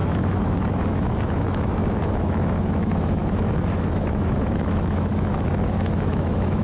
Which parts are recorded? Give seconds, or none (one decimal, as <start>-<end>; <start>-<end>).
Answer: none